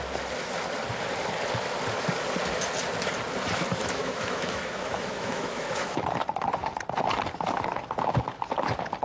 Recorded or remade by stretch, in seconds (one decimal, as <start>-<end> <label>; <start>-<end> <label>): 0.0-3.8 recorded; 3.8-6.0 remade; 6.0-9.0 recorded